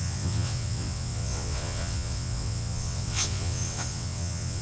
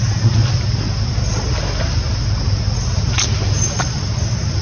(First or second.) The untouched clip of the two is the second